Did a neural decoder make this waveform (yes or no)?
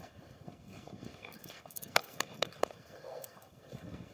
yes